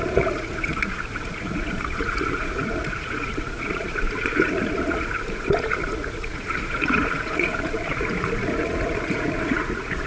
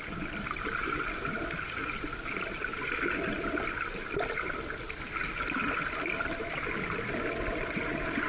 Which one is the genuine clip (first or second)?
second